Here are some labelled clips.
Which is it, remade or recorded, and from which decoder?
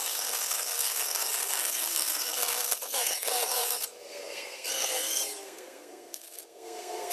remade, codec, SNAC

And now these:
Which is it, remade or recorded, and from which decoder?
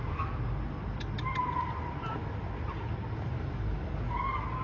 recorded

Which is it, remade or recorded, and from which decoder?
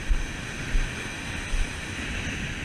recorded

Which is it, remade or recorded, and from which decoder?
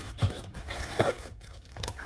remade, codec, SNAC